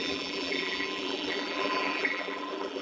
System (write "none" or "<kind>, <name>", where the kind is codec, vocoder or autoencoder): vocoder, BigVGAN v2